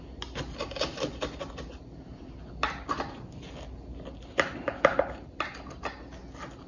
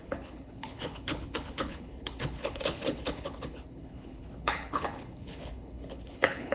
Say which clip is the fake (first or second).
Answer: second